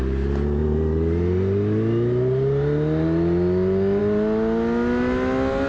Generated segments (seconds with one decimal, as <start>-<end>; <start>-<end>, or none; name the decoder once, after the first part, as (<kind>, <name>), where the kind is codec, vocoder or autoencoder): none